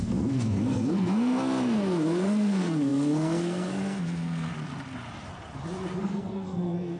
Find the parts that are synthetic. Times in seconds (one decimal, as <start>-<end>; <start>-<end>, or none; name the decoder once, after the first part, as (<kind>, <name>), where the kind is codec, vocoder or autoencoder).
0.0-4.5 (codec, SNAC); 6.0-7.0